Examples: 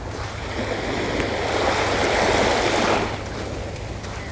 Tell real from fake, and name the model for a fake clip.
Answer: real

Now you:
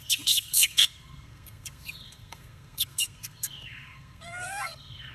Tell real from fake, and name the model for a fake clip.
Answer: fake, codec, SNAC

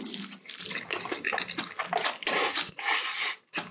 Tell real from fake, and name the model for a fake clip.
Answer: real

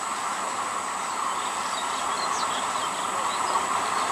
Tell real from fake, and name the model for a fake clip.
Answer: real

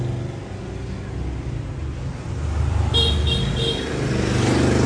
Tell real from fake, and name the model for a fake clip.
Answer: real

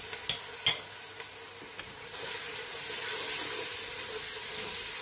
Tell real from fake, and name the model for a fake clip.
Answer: real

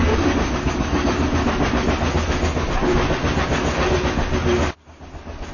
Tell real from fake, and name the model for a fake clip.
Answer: real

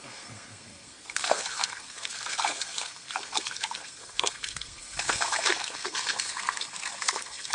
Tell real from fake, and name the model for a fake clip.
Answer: fake, codec, SNAC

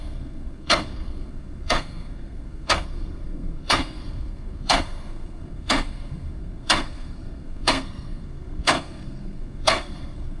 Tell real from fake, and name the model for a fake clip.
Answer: fake, codec, SNAC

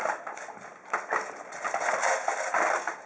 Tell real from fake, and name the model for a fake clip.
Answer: real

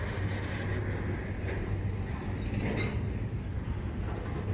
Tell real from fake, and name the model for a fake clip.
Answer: real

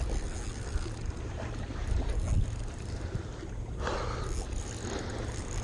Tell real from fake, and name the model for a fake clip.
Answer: real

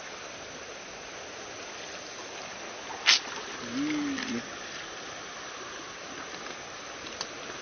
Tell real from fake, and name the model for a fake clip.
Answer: real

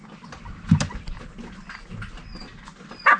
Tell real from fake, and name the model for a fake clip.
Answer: real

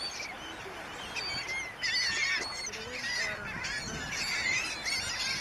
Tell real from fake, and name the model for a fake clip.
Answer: real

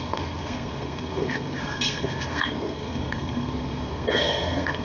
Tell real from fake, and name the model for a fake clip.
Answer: fake, codec, SNAC